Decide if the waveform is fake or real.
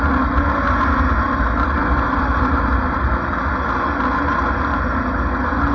real